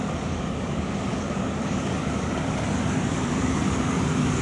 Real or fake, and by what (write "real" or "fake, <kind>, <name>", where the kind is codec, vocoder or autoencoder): fake, codec, DAC